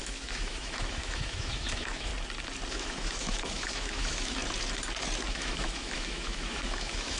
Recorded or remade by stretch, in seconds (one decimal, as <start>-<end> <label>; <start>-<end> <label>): 0.0-2.1 remade; 2.1-2.7 recorded; 2.7-4.4 remade; 4.4-5.3 recorded; 5.3-7.2 remade